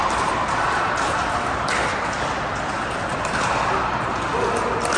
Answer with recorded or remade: recorded